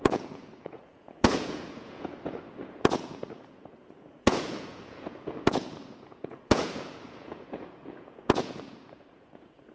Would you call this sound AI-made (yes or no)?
yes